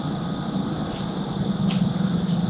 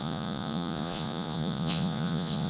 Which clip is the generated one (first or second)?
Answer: second